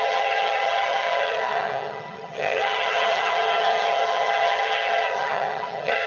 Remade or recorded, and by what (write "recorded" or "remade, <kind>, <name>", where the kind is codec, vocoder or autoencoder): remade, vocoder, HiFi-GAN